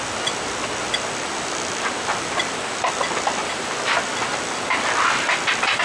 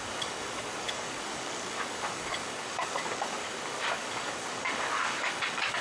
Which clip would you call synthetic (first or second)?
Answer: second